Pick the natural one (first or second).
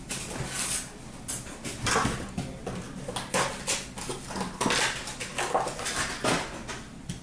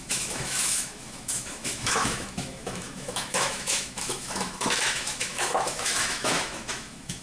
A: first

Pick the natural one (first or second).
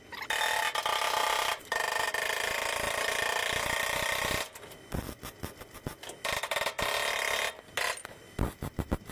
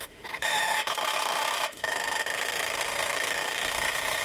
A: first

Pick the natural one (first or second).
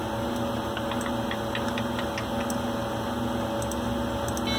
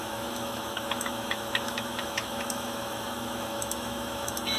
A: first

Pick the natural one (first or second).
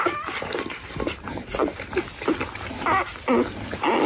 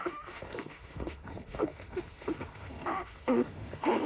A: first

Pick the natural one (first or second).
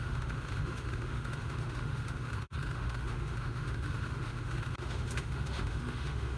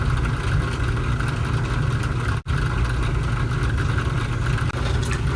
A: second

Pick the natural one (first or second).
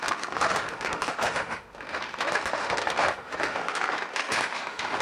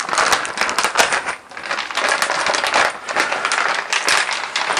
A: second